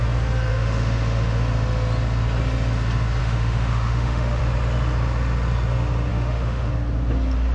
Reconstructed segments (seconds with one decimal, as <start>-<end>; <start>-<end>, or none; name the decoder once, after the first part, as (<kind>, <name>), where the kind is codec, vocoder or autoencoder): 0.5-1.4 (autoencoder, DAC-VAE); 3.2-4.4; 6.1-6.7